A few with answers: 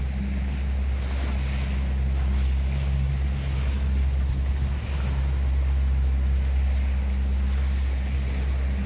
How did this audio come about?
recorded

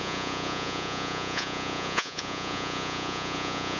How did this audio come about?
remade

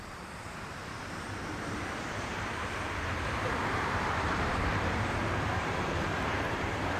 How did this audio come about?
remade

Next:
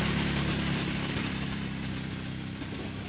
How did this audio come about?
remade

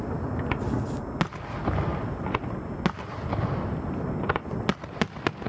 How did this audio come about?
recorded